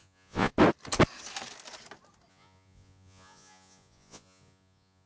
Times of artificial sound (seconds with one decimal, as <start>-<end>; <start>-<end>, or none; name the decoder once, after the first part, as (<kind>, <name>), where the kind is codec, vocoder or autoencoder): 0.0-0.5 (vocoder, Vocos); 2.3-5.1